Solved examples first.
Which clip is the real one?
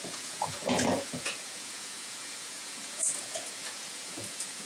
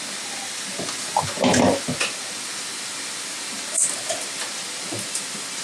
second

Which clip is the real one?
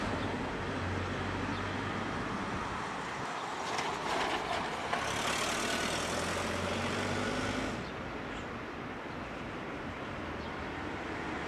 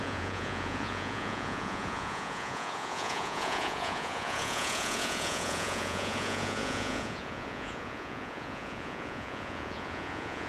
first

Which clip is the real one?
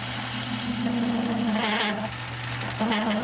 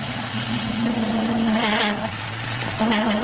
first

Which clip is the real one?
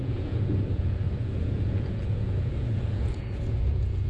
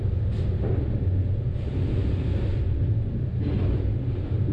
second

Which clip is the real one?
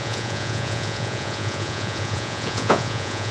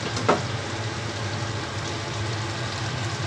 second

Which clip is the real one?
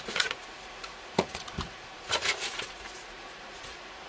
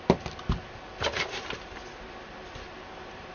second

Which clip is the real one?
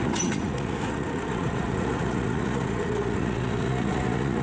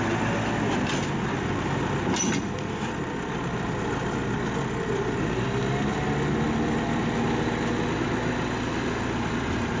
second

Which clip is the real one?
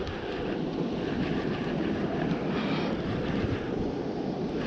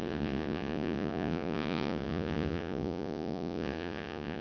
first